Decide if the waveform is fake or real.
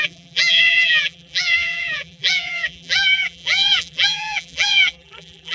fake